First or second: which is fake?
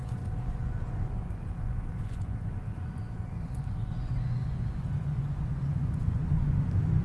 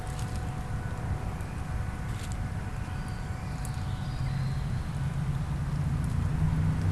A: first